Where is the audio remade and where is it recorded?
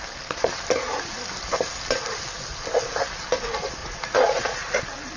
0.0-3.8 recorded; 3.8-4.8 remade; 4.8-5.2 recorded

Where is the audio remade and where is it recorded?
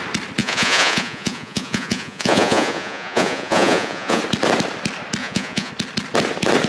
0.0-0.4 recorded; 0.4-4.2 remade; 4.2-5.2 recorded; 5.2-5.7 remade; 5.7-6.7 recorded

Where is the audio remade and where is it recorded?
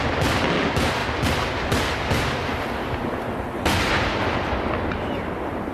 0.0-5.7 recorded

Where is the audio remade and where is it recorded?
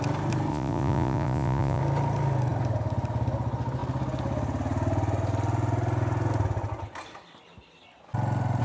0.0-0.5 recorded; 0.5-1.8 remade; 1.8-8.6 recorded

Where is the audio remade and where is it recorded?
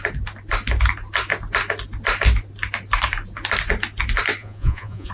0.0-4.4 recorded; 4.4-5.1 remade